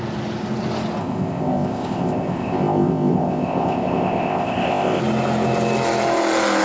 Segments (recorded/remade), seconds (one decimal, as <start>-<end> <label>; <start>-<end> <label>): 0.0-1.0 recorded; 1.0-5.0 remade; 5.0-6.6 recorded